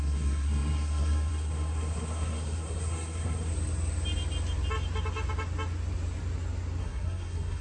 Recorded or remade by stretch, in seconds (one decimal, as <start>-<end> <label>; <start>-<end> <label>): 0.0-3.5 remade; 3.5-6.8 recorded; 6.8-7.6 remade